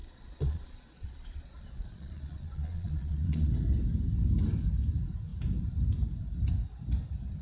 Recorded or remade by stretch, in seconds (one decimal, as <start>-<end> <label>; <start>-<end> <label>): 0.0-3.5 remade; 3.5-7.4 recorded